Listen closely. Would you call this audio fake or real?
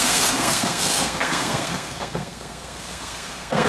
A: fake